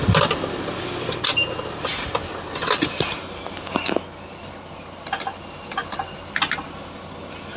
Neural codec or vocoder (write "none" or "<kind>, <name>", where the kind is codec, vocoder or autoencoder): none